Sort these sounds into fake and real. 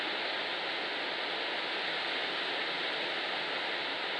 real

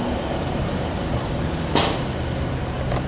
fake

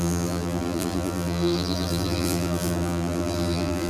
fake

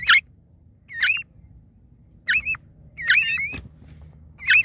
real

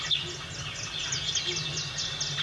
real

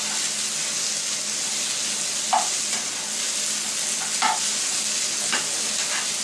real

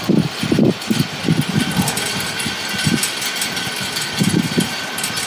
real